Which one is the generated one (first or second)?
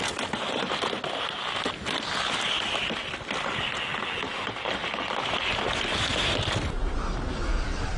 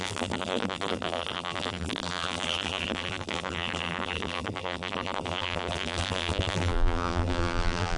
second